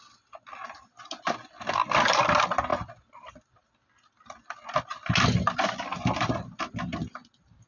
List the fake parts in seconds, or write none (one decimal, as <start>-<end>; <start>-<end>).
none